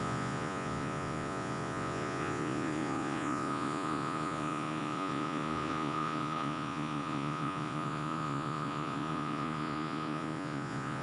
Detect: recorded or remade remade